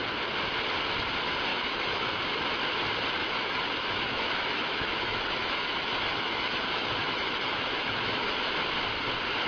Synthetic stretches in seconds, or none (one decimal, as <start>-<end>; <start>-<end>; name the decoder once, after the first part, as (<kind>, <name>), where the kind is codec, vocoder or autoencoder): 1.5-2.2 (autoencoder, DAC-VAE); 3.2-8.5